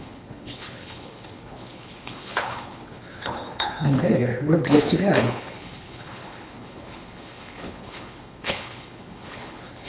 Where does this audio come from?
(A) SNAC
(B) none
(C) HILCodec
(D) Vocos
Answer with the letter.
C